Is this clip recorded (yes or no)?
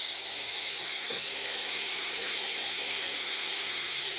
no